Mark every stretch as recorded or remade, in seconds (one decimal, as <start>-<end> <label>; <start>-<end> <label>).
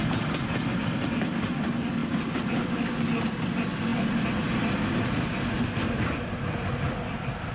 0.0-7.5 recorded